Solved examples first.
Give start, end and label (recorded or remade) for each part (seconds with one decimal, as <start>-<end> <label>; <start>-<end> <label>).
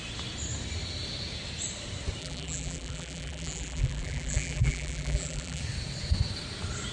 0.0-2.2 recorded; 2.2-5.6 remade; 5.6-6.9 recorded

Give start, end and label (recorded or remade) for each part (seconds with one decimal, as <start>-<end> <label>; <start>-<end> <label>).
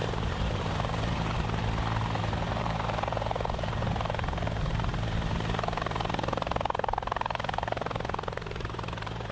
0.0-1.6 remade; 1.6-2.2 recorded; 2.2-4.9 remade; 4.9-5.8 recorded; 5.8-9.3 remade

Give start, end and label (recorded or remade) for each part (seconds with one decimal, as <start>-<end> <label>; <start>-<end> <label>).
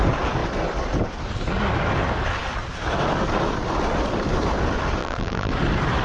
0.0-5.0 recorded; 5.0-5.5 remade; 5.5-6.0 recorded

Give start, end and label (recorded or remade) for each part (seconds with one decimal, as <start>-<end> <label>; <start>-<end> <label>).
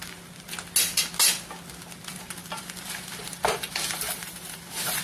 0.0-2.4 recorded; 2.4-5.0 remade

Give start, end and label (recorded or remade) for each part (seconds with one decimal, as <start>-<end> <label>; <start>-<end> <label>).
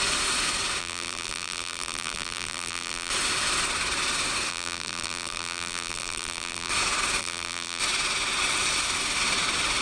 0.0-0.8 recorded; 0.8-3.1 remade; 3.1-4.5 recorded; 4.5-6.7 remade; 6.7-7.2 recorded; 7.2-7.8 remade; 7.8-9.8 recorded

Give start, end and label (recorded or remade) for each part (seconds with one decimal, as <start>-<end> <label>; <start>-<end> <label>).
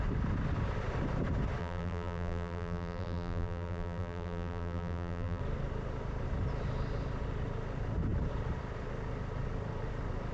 0.0-1.6 recorded; 1.6-5.4 remade; 5.4-10.3 recorded